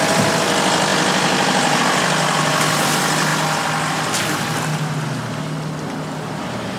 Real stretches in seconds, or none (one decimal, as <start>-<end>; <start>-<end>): 0.0-0.9; 1.8-6.8